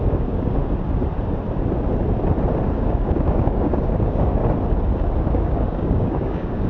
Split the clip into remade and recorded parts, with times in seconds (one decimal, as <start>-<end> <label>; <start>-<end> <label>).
0.0-0.6 remade; 0.6-2.7 recorded; 2.7-4.4 remade; 4.4-5.2 recorded; 5.2-6.7 remade